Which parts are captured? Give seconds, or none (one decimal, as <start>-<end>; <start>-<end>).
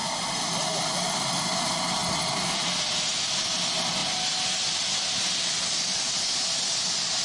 1.6-7.2